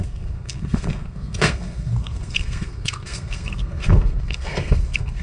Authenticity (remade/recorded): remade